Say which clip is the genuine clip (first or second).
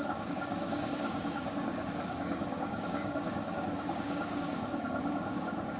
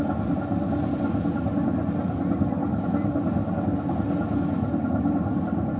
second